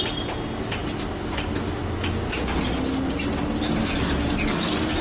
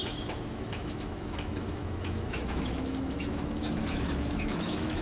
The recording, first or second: first